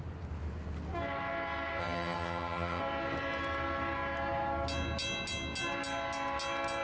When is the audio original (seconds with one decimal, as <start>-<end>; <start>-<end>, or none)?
0.0-1.8; 2.8-6.8